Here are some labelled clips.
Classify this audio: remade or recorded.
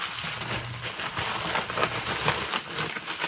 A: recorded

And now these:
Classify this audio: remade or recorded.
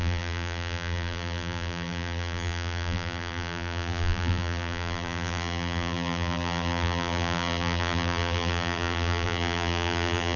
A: remade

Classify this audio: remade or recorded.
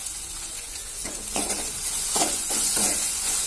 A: remade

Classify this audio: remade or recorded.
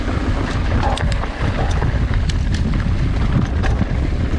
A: recorded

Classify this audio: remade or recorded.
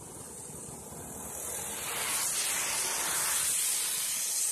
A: recorded